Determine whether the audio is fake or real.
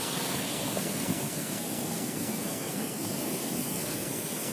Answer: fake